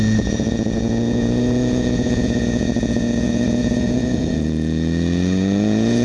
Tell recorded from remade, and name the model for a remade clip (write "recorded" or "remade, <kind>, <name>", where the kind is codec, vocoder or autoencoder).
remade, vocoder, Vocos